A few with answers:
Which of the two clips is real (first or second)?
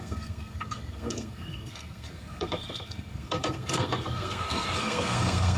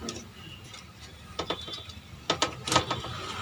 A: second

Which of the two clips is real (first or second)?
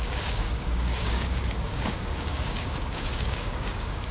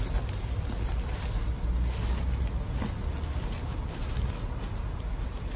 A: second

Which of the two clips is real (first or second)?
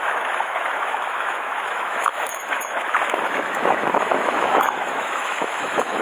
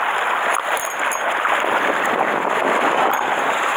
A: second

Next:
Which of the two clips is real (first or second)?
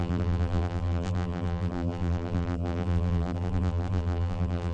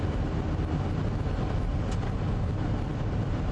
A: second